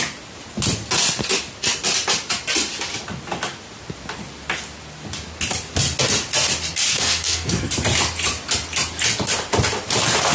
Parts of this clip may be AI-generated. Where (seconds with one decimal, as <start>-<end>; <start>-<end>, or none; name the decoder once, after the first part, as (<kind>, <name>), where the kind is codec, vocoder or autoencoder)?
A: 6.9-7.7 (codec, SNAC)